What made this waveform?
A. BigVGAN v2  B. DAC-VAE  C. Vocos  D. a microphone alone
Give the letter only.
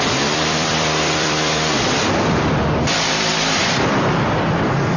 A